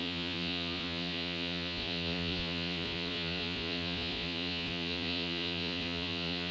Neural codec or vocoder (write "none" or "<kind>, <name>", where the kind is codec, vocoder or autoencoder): vocoder, Vocos